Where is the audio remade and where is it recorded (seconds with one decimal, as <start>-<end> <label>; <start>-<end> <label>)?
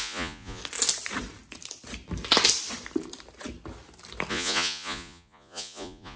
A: 0.0-0.6 remade; 0.6-4.3 recorded; 4.3-6.2 remade